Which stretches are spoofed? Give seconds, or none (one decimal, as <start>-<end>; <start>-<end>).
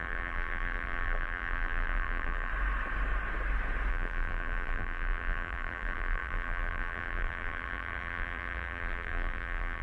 0.0-2.5; 3.9-9.8